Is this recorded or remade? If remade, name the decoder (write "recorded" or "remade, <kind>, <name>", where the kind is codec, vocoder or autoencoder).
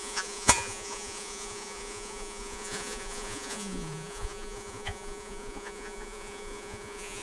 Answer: remade, vocoder, Vocos